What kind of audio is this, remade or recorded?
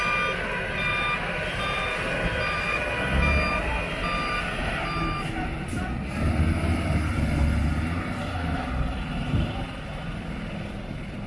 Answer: recorded